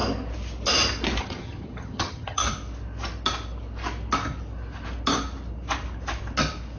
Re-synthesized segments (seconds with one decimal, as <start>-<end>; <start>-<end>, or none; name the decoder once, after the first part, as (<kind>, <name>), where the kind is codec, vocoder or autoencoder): 1.2-2.4 (vocoder, HiFi-GAN)